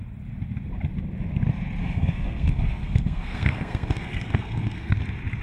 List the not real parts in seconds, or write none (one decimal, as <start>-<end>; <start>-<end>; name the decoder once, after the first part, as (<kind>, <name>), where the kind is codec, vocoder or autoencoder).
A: 1.8-5.0 (codec, SNAC)